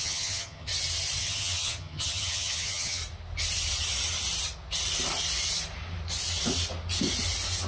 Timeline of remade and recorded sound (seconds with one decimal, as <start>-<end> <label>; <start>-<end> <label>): 0.0-0.7 remade; 0.7-1.2 recorded; 1.2-3.0 remade; 3.0-7.7 recorded

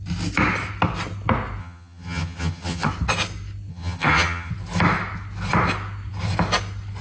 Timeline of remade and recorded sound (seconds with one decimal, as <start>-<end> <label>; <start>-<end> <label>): 0.0-1.6 recorded; 1.6-2.9 remade; 2.9-3.7 recorded; 3.7-4.5 remade; 4.5-7.0 recorded